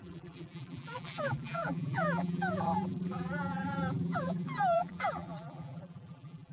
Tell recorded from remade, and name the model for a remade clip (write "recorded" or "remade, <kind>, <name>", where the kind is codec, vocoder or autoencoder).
remade, vocoder, BigVGAN v2